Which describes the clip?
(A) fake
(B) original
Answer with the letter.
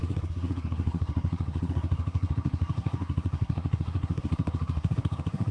A